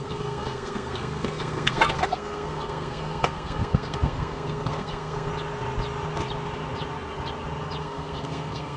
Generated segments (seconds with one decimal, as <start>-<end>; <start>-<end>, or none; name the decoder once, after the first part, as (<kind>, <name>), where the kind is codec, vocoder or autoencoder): 0.0-5.3 (codec, SNAC); 7.8-8.8